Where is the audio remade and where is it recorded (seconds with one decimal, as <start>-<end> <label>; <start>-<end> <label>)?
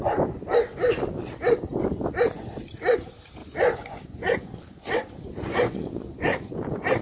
0.0-3.4 recorded; 3.4-6.5 remade; 6.5-7.0 recorded